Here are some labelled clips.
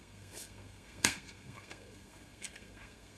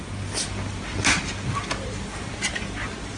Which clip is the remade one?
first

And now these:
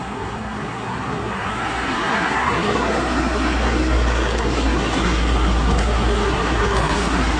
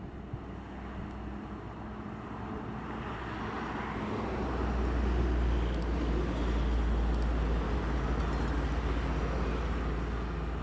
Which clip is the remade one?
first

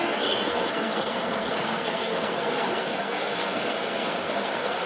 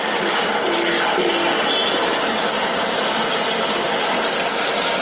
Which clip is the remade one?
first